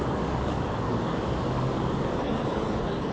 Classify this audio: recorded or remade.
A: remade